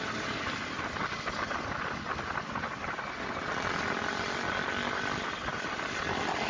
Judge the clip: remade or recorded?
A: recorded